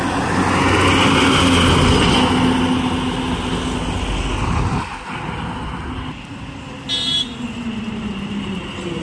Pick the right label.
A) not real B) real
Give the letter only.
B